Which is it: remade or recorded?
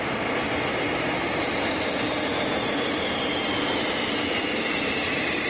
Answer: recorded